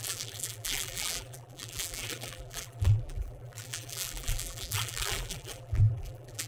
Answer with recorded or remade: remade